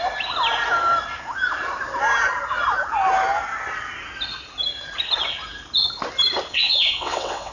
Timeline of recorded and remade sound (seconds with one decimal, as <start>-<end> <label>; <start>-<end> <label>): 0.0-6.5 recorded; 6.5-7.5 remade